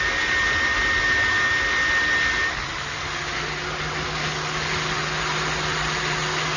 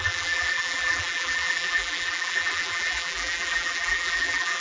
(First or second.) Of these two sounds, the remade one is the second